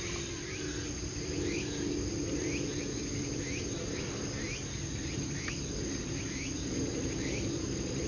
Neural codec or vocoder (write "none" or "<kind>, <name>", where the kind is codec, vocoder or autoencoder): none